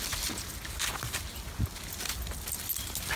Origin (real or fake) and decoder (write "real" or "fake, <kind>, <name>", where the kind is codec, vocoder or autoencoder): real